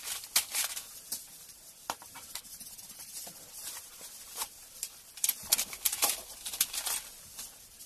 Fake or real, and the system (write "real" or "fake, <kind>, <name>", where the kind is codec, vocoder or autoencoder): real